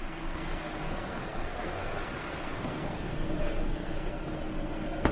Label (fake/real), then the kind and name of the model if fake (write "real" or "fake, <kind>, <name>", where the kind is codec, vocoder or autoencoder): fake, codec, SNAC